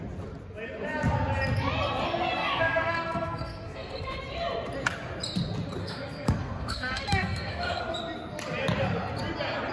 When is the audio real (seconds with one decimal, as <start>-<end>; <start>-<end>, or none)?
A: 0.0-2.4; 4.2-5.8; 7.8-9.7